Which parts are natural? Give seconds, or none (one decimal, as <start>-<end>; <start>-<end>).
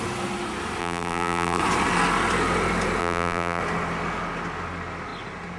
0.0-0.8; 1.6-3.0; 3.6-5.6